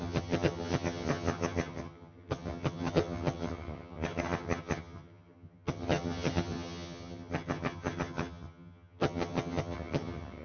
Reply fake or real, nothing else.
fake